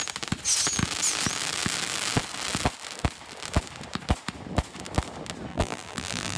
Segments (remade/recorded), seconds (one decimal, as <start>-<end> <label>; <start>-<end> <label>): 0.0-5.5 recorded; 5.5-6.4 remade

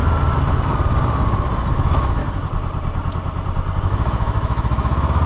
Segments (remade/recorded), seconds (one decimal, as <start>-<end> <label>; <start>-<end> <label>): 0.0-1.7 recorded; 1.7-2.2 remade; 2.2-3.8 recorded; 3.8-5.3 remade

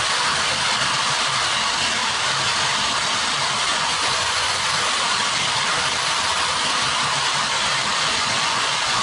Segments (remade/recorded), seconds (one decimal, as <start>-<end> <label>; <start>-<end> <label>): 0.0-3.7 recorded; 3.7-4.7 remade; 4.7-7.9 recorded; 7.9-9.0 remade

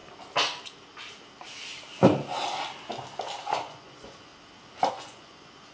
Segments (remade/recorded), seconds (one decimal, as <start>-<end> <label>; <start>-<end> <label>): 0.0-3.4 recorded; 3.4-4.3 remade; 4.3-4.9 recorded; 4.9-5.7 remade